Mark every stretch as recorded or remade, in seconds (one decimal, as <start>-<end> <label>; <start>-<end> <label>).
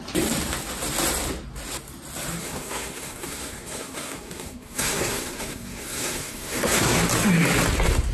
0.0-2.4 recorded; 2.4-7.0 remade; 7.0-8.1 recorded